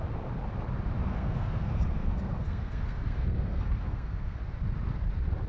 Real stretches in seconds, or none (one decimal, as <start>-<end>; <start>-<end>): 0.0-1.1; 4.4-5.5